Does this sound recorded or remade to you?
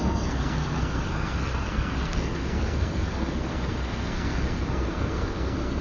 remade